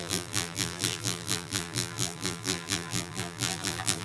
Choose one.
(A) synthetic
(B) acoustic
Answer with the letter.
A